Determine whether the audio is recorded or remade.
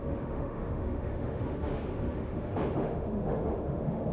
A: remade